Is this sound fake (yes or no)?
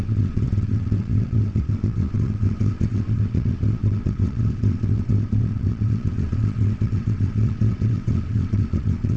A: yes